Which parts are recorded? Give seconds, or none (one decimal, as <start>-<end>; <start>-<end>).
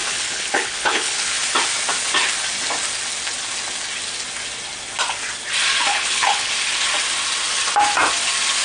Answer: 1.3-5.9; 6.5-8.6